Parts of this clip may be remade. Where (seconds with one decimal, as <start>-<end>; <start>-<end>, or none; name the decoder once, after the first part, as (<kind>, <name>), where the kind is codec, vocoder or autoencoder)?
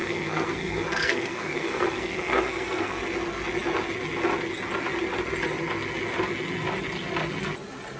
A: 0.0-3.0 (codec, SNAC)